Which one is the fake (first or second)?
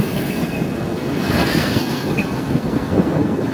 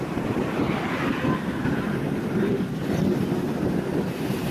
first